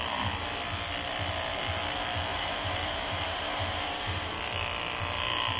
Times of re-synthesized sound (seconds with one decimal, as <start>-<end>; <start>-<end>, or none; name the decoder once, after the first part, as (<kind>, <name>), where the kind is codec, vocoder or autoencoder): 2.3-4.3 (vocoder, BigVGAN v2)